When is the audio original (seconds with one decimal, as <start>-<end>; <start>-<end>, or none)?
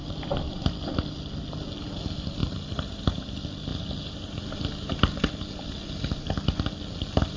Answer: 0.8-2.4; 3.3-3.7; 4.4-7.4